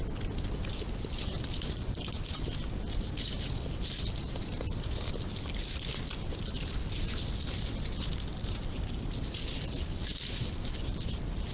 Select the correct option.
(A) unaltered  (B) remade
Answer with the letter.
A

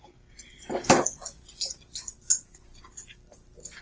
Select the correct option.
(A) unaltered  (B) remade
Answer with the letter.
A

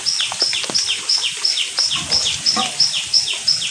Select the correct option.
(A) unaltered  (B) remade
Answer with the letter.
A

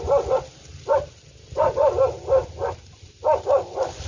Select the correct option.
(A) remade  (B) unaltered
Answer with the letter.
B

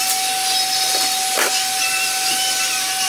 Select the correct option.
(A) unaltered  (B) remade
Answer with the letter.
A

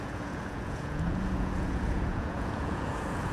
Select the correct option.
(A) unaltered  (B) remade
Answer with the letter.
B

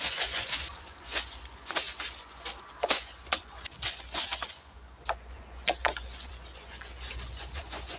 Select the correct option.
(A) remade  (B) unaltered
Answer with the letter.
A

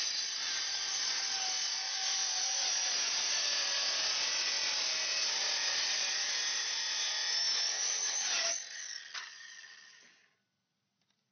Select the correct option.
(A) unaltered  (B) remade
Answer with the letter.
A